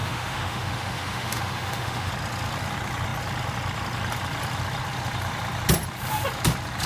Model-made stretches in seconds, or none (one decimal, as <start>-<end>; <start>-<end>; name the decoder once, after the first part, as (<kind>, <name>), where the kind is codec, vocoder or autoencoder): 0.0-2.1 (autoencoder, DAC-VAE)